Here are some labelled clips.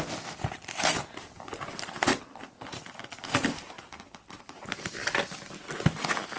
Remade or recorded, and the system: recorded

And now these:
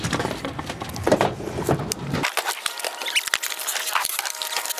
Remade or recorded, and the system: remade, vocoder, BigVGAN v2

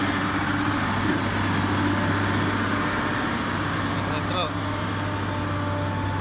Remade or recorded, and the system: recorded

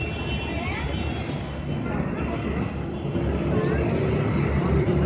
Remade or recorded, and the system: recorded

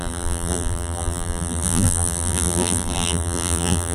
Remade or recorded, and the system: remade, vocoder, BigVGAN v2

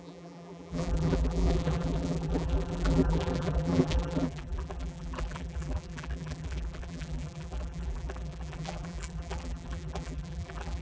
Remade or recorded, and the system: remade, vocoder, BigVGAN v2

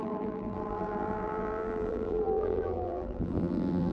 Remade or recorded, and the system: remade, vocoder, BigVGAN v2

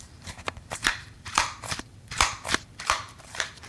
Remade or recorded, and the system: remade, vocoder, BigVGAN v2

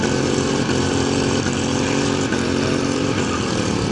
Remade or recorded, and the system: remade, vocoder, BigVGAN v2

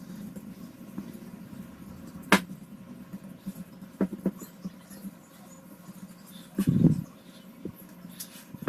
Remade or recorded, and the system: recorded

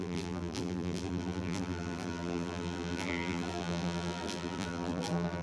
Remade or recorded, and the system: remade, vocoder, BigVGAN v2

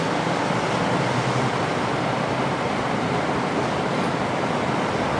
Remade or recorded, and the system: remade, vocoder, BigVGAN v2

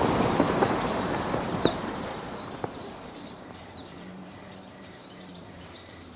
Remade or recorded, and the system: remade, vocoder, BigVGAN v2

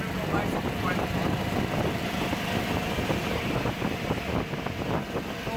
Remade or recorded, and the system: recorded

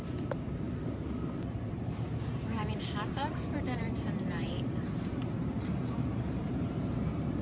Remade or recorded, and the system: remade, vocoder, BigVGAN v2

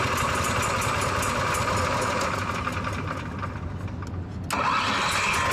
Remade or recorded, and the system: recorded